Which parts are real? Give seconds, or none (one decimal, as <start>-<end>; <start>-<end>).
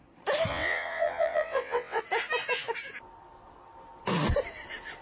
0.0-0.5; 2.0-5.0